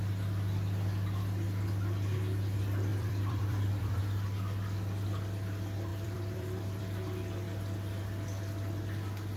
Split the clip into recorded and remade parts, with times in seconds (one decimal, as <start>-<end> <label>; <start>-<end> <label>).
0.0-2.9 recorded; 2.9-4.0 remade; 4.0-5.9 recorded; 5.9-6.8 remade; 6.8-9.4 recorded